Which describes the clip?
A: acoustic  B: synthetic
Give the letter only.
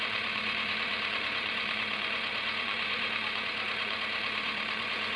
B